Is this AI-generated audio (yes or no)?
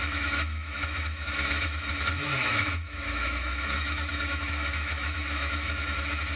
yes